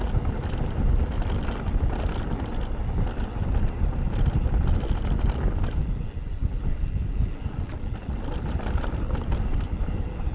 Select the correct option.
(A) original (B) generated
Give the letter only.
A